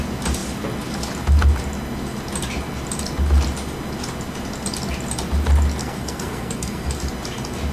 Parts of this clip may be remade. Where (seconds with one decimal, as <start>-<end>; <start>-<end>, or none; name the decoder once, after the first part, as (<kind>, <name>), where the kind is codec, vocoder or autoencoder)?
5.8-7.0 (codec, SNAC)